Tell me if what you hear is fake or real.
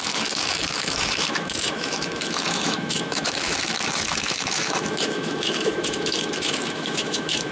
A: fake